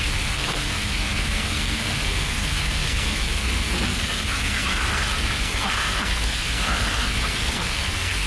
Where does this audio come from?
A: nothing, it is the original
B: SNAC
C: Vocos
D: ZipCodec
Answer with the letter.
B